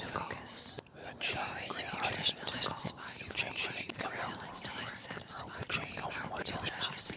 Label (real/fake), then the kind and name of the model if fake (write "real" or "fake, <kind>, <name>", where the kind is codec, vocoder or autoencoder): fake, vocoder, BigVGAN v2